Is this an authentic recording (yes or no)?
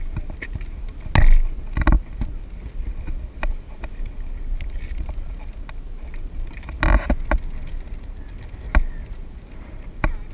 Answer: yes